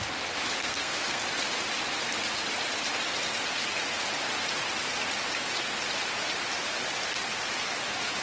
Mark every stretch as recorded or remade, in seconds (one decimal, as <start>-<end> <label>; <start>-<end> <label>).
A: 0.0-0.6 recorded; 0.6-1.2 remade; 1.2-8.2 recorded